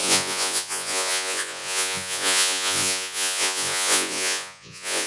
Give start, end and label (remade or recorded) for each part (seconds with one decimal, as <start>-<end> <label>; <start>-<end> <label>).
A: 0.0-5.1 remade

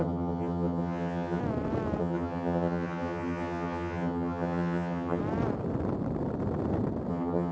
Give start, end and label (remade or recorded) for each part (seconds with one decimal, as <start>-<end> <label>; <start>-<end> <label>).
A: 0.0-1.4 remade; 1.4-2.0 recorded; 2.0-5.2 remade; 5.2-7.1 recorded; 7.1-7.5 remade

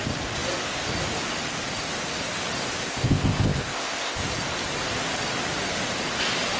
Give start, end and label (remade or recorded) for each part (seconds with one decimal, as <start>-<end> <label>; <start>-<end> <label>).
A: 0.0-2.9 recorded; 2.9-4.2 remade; 4.2-6.6 recorded

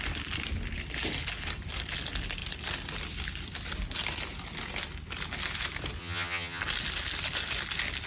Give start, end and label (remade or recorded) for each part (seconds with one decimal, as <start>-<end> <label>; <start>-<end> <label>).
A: 0.0-6.0 recorded; 6.0-6.6 remade; 6.6-8.1 recorded

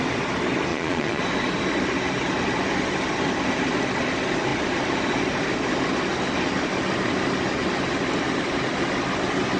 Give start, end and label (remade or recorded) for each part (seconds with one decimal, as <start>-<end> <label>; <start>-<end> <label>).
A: 0.0-0.7 recorded; 0.7-1.2 remade; 1.2-9.6 recorded

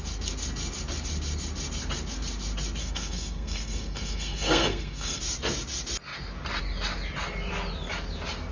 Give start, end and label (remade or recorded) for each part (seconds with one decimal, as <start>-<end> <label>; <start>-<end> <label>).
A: 0.0-2.8 recorded; 2.8-5.2 remade; 5.2-8.5 recorded